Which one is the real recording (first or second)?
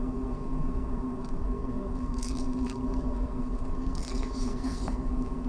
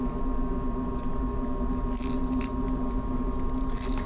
second